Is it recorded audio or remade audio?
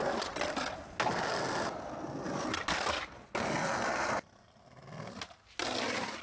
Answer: recorded